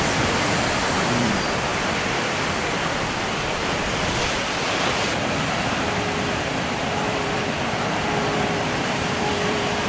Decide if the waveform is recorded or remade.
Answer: remade